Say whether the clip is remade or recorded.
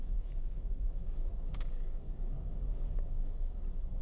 remade